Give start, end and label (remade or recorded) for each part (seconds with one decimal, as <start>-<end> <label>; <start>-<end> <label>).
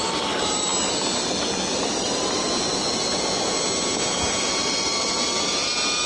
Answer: 0.0-0.7 remade; 0.7-1.7 recorded; 1.7-2.4 remade; 2.4-4.4 recorded; 4.4-6.1 remade